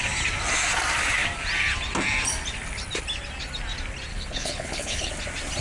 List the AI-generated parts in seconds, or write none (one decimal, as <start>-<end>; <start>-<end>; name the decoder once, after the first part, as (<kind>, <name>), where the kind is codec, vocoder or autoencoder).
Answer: 4.1-5.1 (codec, HILCodec)